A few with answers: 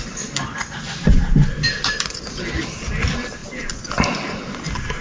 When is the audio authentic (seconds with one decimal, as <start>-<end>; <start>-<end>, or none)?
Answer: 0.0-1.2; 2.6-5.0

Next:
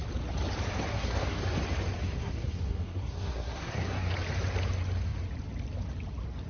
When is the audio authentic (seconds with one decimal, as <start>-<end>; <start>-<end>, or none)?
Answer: 0.0-0.9; 1.4-2.0; 4.1-6.5

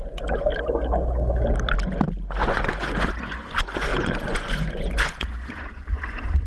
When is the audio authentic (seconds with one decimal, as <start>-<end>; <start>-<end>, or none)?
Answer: 0.5-2.4